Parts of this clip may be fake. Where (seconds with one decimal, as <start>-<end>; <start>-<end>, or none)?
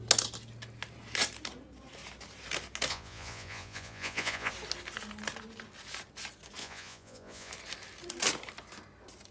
2.9-4.5; 6.6-7.5